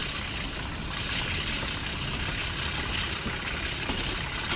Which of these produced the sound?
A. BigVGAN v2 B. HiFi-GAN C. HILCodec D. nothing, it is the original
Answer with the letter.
D